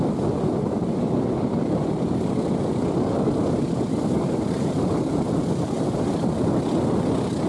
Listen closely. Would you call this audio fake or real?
real